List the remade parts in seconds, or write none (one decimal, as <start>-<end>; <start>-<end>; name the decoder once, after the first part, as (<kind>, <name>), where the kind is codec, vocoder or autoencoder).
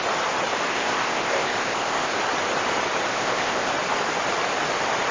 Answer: 0.7-2.2 (codec, ZipCodec); 3.1-3.7